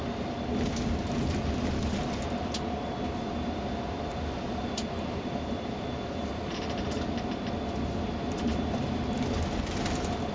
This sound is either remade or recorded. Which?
recorded